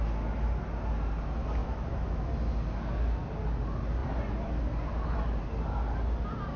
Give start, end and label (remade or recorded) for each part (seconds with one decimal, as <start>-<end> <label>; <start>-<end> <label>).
0.0-1.6 recorded; 1.6-2.3 remade; 2.3-6.6 recorded